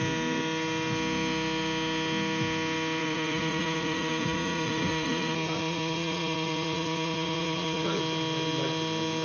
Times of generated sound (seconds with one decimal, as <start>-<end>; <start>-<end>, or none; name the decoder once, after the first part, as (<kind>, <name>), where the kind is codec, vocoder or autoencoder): 3.0-8.0 (vocoder, Vocos)